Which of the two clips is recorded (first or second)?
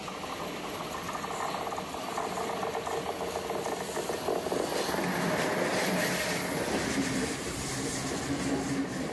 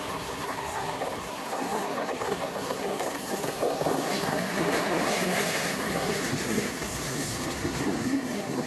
first